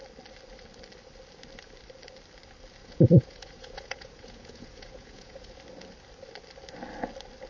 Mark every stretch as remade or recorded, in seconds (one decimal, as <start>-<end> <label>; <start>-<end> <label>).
0.0-2.8 recorded; 2.8-5.6 remade; 5.6-7.5 recorded